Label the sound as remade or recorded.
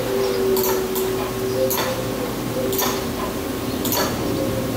remade